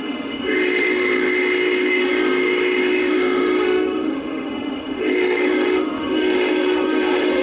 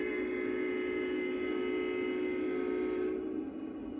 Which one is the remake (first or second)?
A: first